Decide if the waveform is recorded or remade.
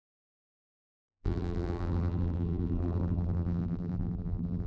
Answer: remade